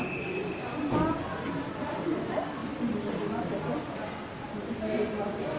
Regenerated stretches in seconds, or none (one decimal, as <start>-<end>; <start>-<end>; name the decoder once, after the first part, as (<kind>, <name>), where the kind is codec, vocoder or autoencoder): none